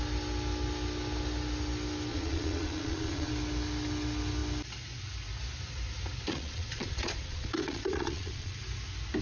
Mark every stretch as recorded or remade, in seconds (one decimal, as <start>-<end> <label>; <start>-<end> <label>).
0.0-2.1 recorded; 2.1-3.3 remade; 3.3-6.3 recorded; 6.3-8.6 remade; 8.6-9.2 recorded